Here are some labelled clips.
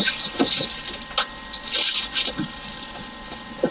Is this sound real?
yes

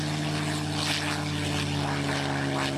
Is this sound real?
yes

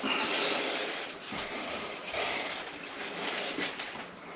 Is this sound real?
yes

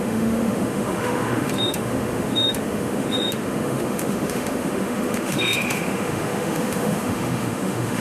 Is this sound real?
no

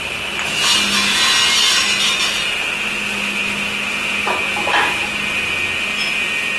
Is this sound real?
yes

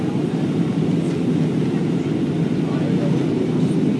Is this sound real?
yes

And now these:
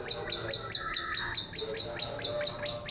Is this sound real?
yes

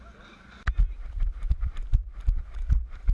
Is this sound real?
no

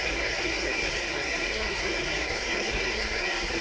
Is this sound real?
no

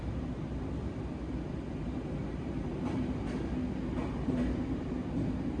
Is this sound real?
yes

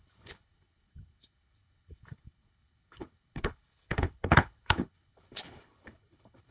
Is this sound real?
no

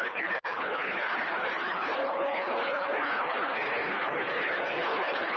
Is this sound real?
no